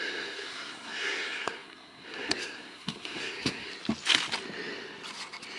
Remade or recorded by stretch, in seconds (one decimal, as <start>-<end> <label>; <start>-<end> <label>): 0.0-3.7 remade; 3.7-5.6 recorded